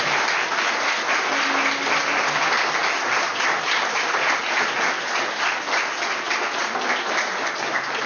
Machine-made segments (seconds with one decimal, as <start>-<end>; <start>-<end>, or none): none